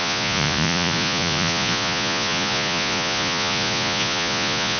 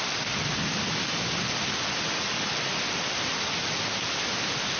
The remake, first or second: first